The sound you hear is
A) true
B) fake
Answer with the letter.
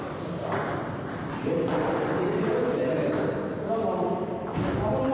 A